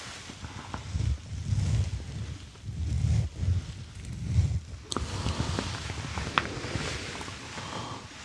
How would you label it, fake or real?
real